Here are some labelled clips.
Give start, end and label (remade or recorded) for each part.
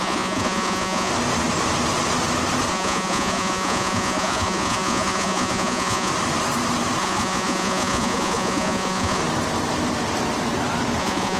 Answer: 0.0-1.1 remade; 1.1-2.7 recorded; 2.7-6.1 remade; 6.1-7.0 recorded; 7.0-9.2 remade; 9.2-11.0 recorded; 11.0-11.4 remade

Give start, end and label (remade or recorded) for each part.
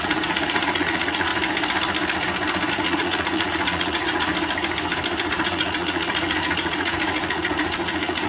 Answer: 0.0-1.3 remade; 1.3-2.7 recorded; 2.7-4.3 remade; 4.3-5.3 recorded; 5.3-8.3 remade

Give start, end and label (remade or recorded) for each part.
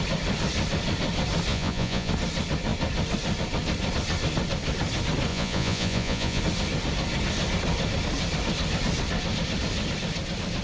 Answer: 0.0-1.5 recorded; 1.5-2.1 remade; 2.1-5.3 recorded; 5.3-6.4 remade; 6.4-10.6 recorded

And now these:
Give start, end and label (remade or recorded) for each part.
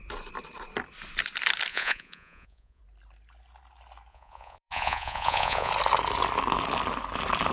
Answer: 0.0-1.7 recorded; 1.7-2.8 remade; 2.8-4.1 recorded; 4.1-5.7 remade; 5.7-7.5 recorded